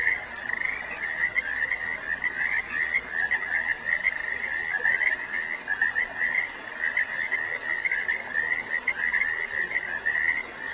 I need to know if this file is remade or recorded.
recorded